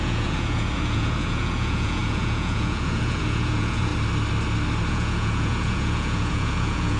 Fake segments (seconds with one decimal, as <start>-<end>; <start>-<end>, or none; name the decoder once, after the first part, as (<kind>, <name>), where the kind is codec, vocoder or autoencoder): 0.0-3.9 (vocoder, Vocos); 4.9-7.0